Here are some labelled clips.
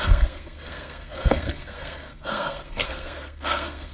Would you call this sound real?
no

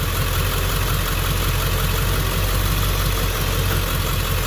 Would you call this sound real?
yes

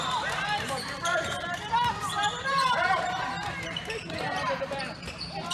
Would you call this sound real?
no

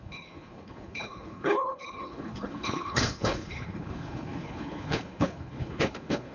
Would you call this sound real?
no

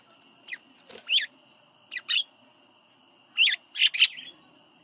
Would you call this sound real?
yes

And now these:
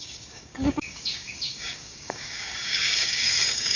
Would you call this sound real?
no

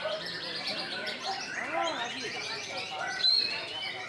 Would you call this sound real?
no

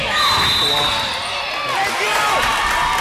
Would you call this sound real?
yes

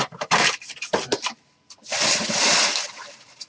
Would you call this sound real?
yes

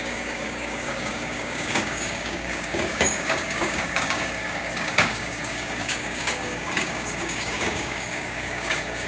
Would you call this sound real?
no